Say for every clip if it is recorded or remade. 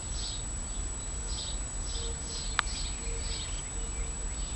recorded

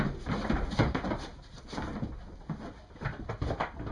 recorded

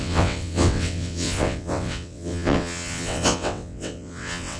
remade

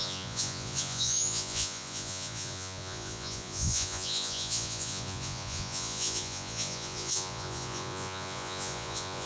remade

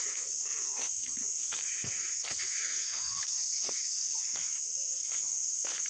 remade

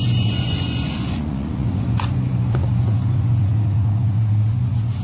remade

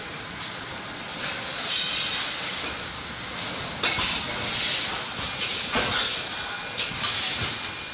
recorded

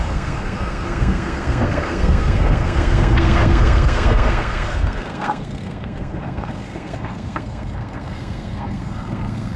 remade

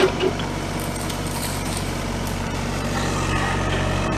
remade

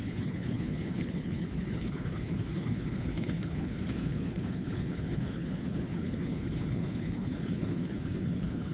remade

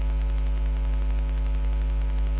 recorded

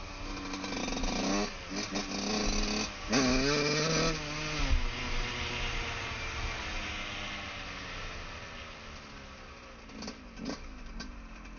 recorded